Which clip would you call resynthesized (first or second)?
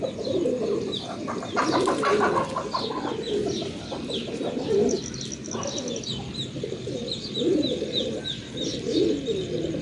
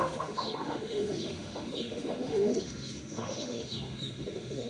second